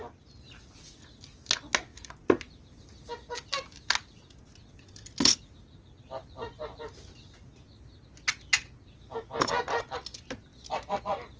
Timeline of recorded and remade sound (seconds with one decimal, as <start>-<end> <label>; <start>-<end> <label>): 0.0-11.4 recorded